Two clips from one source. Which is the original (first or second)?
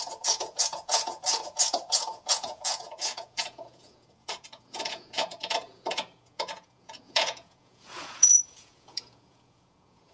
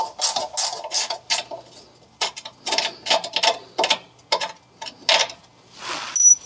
second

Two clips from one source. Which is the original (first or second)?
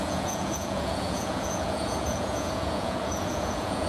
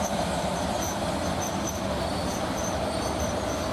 second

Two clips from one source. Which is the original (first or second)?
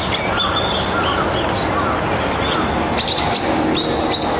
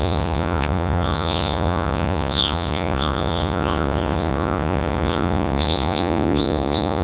first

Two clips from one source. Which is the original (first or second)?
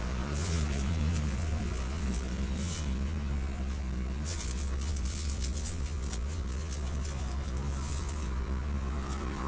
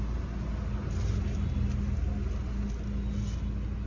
second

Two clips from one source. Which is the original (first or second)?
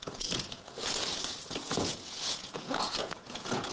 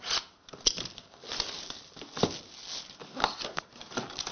second